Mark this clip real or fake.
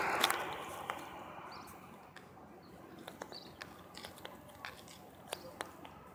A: real